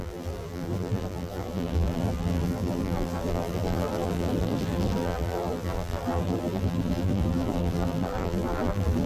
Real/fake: fake